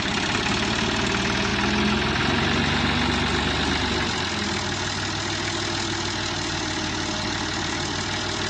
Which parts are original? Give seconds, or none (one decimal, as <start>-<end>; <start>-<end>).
0.0-8.5